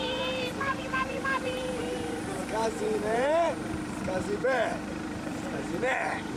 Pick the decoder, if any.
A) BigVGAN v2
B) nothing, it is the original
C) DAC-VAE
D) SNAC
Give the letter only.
A